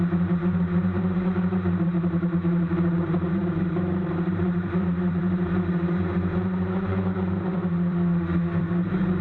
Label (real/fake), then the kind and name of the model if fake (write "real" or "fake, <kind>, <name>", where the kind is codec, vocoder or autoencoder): fake, vocoder, BigVGAN v2